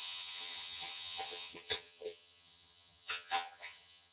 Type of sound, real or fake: fake